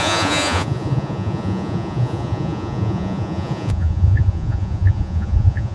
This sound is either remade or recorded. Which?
remade